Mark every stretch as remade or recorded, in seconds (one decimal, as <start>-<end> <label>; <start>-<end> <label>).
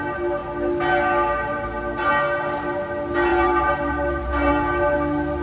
0.0-3.3 recorded; 3.3-4.5 remade; 4.5-5.4 recorded